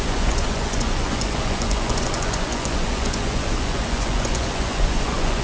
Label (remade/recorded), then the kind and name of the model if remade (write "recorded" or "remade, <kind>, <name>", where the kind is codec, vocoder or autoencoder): remade, vocoder, Vocos